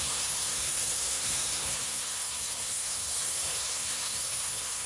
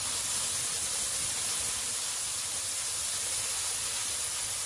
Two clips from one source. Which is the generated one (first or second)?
first